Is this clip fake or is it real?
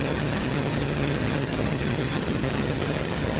fake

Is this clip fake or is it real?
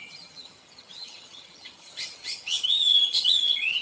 fake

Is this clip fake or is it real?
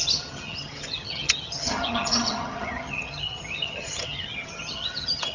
fake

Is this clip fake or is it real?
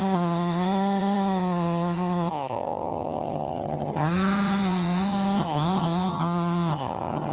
fake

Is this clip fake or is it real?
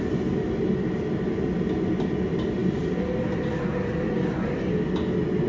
real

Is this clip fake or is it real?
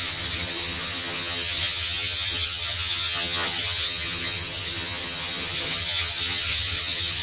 fake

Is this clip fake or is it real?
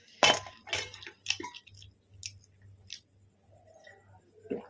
real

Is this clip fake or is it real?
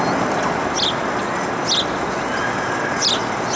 real